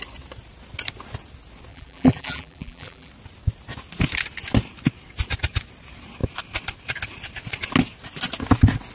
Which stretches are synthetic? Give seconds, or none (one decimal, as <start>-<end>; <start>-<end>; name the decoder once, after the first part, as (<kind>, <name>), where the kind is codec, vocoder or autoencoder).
1.7-3.1 (vocoder, BigVGAN v2)